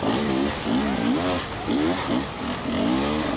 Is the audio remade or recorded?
recorded